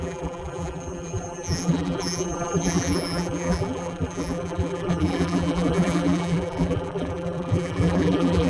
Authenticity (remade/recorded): remade